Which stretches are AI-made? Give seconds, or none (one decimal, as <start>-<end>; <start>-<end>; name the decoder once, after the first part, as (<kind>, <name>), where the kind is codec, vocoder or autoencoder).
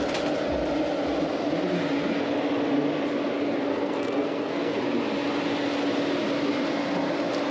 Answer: 3.7-4.8 (codec, SNAC)